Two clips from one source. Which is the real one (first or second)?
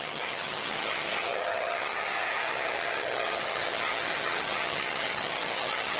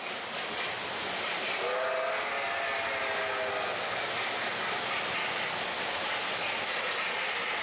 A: second